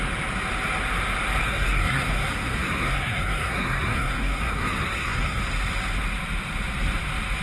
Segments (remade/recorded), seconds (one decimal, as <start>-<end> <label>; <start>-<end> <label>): 0.0-1.4 recorded; 1.4-5.4 remade; 5.4-7.4 recorded